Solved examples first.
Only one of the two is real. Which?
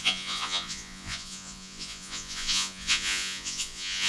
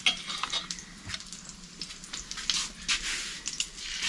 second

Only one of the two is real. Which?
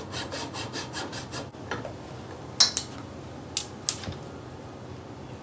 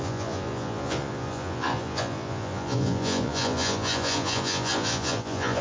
first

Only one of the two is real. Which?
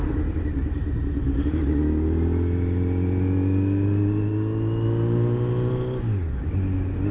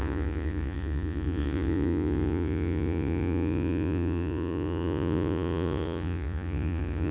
first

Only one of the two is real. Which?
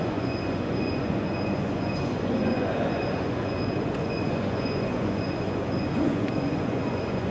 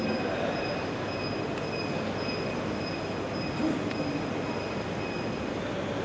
second